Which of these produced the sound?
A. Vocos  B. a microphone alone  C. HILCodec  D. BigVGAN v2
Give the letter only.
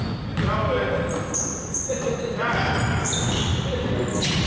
B